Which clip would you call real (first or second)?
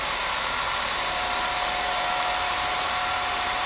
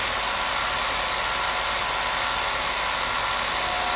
second